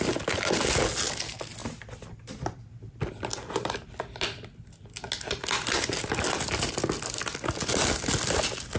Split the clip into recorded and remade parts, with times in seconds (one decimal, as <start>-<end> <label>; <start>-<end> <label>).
0.0-8.8 recorded